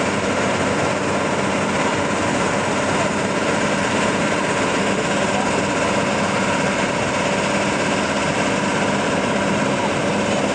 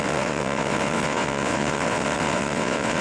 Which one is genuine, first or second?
first